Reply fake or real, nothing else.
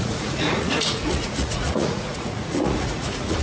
fake